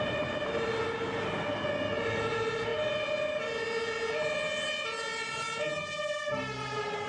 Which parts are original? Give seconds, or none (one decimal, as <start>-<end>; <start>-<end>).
0.0-7.1